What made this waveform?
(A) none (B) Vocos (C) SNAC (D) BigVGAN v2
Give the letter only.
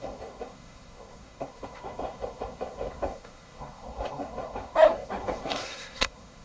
C